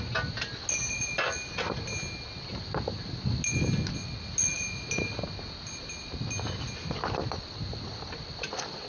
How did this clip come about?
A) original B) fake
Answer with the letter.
A